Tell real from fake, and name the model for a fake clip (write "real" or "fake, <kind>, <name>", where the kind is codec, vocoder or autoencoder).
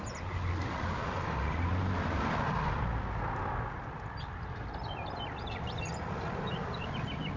real